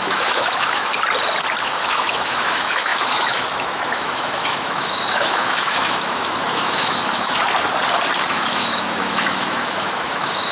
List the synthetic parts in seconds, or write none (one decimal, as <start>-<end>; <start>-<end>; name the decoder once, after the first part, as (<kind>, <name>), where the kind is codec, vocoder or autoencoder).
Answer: 0.0-0.9 (autoencoder, DAC-VAE); 1.6-7.4; 8.3-10.5